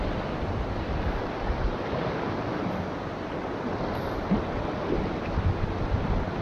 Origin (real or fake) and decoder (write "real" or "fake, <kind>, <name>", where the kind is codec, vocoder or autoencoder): real